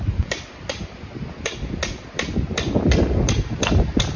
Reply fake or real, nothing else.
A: real